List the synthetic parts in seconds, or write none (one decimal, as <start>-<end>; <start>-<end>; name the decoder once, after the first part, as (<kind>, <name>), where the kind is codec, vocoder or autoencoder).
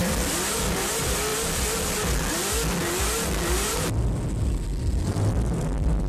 none